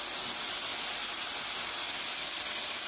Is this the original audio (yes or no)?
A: yes